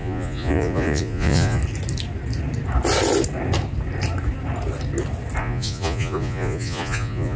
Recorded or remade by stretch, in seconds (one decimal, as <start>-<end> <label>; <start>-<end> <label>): 0.0-1.6 remade; 1.6-5.4 recorded; 5.4-7.4 remade